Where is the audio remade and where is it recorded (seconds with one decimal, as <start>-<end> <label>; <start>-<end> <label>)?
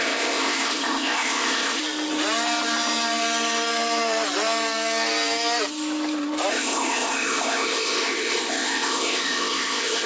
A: 0.0-1.8 remade; 1.8-6.5 recorded; 6.5-10.1 remade